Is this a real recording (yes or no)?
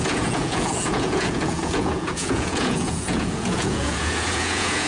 no